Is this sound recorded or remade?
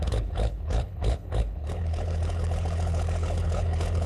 remade